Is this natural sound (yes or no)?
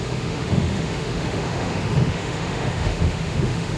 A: no